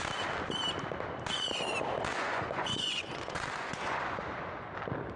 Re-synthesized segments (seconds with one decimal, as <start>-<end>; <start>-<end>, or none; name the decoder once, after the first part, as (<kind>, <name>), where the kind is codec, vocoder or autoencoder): 2.1-4.2 (vocoder, Vocos)